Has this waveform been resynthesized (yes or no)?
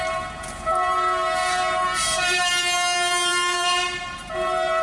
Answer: yes